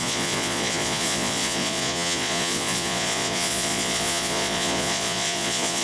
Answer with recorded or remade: remade